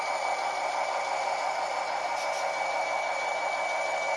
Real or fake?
fake